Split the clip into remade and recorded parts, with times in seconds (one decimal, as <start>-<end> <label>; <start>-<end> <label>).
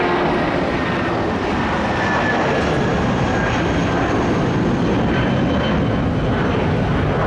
0.0-7.3 recorded